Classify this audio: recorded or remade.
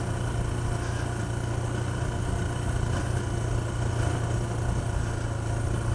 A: recorded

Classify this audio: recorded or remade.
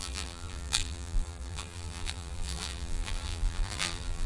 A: remade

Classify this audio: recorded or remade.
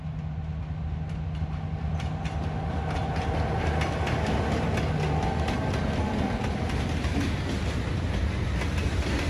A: recorded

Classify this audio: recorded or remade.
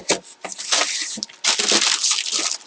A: recorded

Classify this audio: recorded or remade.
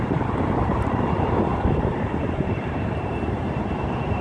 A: remade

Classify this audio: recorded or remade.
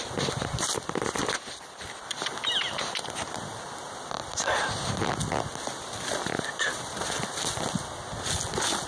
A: recorded